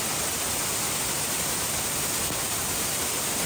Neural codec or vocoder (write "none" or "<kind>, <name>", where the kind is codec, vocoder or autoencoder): none